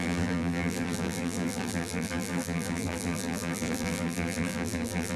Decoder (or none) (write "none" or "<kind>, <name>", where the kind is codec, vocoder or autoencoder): vocoder, BigVGAN v2